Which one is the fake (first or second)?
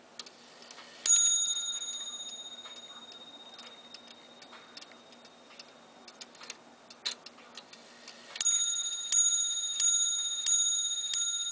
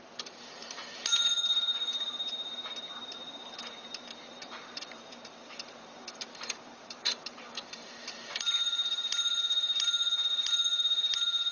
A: second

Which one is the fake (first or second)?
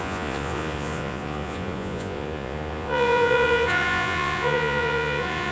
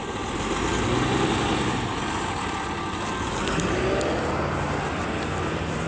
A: first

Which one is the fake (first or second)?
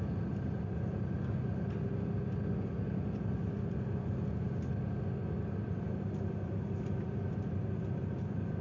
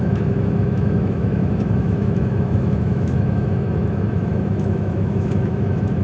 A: second